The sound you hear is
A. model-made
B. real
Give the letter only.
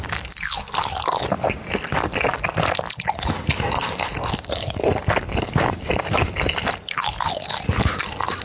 B